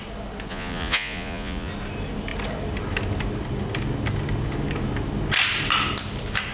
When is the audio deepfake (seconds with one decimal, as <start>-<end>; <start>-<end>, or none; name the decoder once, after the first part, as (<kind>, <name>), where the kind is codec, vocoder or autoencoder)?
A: 0.5-1.7 (vocoder, Vocos)